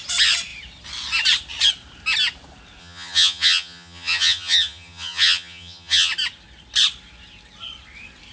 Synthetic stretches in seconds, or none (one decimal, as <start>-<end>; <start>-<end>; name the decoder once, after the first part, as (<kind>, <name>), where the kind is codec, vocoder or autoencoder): 2.8-6.1 (vocoder, HiFi-GAN)

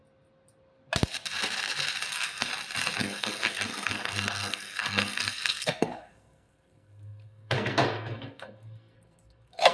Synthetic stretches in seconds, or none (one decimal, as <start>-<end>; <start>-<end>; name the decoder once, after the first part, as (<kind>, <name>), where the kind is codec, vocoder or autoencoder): 2.1-2.5 (codec, SNAC); 3.0-9.7

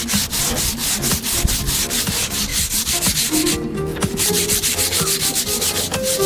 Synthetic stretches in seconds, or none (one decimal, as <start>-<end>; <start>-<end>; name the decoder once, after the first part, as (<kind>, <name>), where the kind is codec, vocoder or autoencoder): 3.9-5.4 (vocoder, BigVGAN v2)

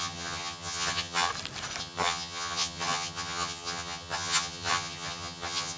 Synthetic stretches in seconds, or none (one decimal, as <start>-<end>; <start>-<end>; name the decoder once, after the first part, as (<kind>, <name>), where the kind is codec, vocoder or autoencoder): 0.0-1.3 (vocoder, HiFi-GAN); 1.8-5.8

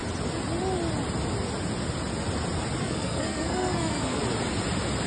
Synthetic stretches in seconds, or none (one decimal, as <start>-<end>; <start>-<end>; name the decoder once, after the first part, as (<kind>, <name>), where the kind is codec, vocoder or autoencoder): 2.8-4.2 (codec, SNAC)

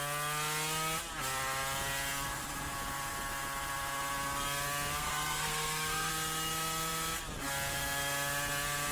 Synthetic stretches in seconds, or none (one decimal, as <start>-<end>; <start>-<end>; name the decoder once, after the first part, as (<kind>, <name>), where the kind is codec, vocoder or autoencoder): 5.0-6.1 (codec, SNAC)